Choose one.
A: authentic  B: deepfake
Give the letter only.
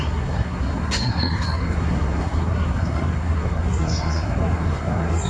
B